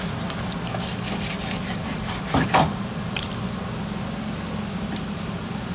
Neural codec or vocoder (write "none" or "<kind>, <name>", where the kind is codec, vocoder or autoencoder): vocoder, BigVGAN v2